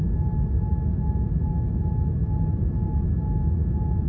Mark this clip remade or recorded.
recorded